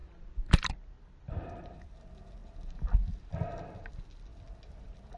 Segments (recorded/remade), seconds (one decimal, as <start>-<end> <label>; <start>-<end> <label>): 0.0-5.2 recorded